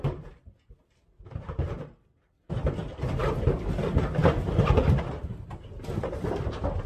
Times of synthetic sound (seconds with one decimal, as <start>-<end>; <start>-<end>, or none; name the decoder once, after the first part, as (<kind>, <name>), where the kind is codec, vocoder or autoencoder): none